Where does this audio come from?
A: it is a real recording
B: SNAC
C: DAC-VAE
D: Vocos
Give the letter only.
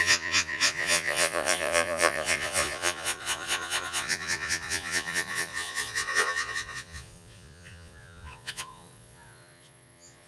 D